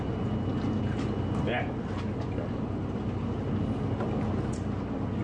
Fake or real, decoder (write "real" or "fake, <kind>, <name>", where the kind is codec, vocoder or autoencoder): real